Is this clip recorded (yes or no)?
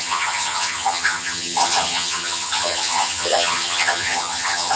no